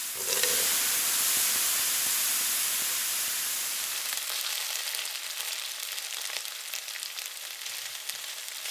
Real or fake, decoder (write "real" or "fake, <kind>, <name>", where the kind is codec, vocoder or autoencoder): fake, vocoder, BigVGAN v2